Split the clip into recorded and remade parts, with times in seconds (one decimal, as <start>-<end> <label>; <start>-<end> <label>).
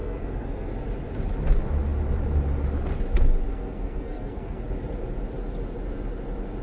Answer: 0.0-0.7 remade; 0.7-3.5 recorded; 3.5-4.6 remade; 4.6-6.6 recorded